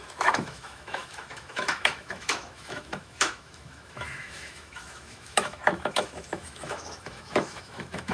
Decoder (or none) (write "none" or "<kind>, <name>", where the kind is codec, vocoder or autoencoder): autoencoder, DAC-VAE